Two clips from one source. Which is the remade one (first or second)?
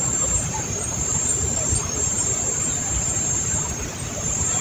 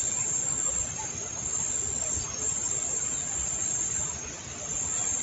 first